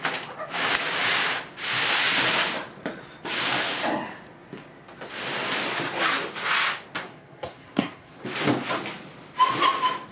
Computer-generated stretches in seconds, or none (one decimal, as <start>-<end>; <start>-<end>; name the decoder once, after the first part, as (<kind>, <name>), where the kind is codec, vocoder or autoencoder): 7.1-8.2 (codec, SNAC)